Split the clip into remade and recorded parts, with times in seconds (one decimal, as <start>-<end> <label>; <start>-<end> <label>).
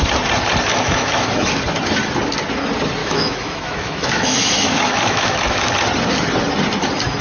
0.0-0.7 recorded; 0.7-1.6 remade; 1.6-3.0 recorded; 3.0-5.7 remade; 5.7-7.2 recorded